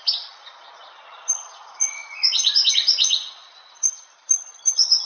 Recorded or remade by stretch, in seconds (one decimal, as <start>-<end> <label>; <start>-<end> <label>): 0.0-5.0 remade